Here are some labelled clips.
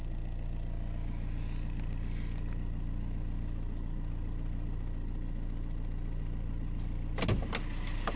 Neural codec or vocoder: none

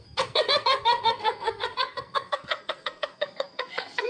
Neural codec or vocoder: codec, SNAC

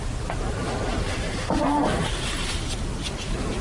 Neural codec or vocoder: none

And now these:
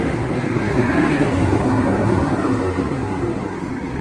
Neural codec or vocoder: codec, SNAC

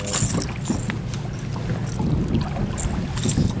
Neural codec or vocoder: none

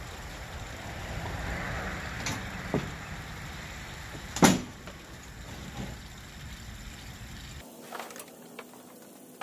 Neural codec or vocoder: none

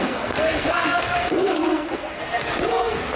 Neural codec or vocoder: codec, SNAC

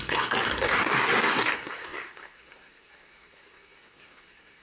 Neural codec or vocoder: codec, SNAC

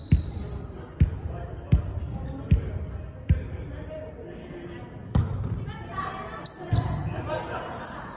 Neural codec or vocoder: none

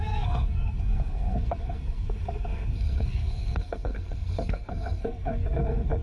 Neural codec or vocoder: codec, SNAC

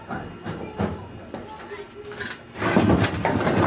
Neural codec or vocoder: none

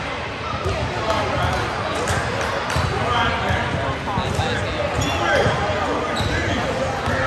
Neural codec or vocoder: none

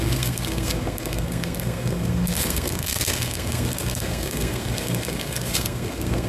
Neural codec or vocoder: codec, SNAC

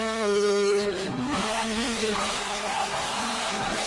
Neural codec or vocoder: codec, SNAC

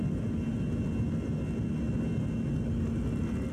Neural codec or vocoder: none